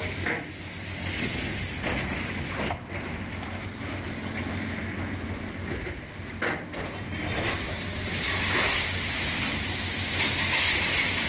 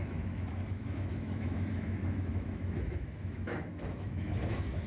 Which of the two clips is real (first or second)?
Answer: first